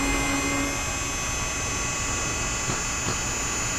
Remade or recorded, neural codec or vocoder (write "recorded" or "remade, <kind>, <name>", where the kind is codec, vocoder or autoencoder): recorded